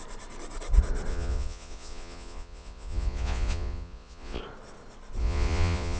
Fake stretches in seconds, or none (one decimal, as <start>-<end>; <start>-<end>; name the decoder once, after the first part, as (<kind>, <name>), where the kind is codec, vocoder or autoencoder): 1.1-4.4 (vocoder, Vocos); 5.2-6.0